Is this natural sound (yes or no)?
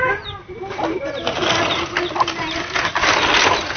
yes